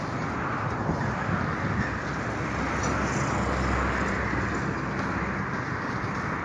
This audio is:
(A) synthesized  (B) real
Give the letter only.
B